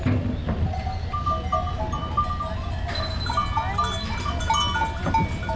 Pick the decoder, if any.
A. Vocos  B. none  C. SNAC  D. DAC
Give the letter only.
B